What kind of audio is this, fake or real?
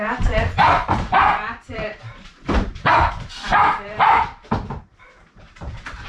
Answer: fake